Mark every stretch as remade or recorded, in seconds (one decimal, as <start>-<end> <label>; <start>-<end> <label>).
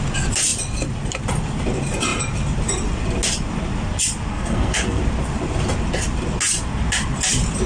0.0-4.3 recorded; 4.3-5.0 remade; 5.0-7.7 recorded